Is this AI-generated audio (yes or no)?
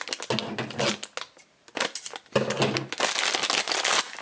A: no